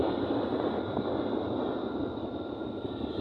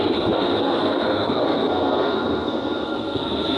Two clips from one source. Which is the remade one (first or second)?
second